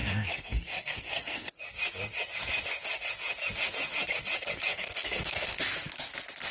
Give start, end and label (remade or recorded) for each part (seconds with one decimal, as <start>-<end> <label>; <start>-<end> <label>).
0.0-1.5 remade; 1.5-4.7 recorded; 4.7-5.6 remade; 5.6-6.5 recorded